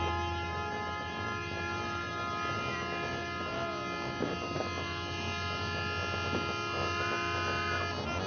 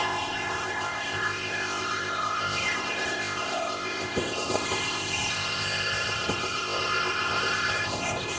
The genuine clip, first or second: first